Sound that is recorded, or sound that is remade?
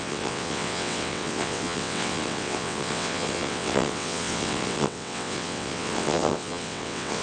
remade